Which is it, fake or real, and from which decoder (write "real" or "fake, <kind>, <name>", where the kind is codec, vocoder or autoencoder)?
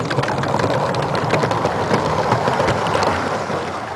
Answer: real